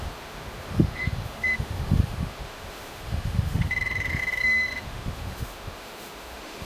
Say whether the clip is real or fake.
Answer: fake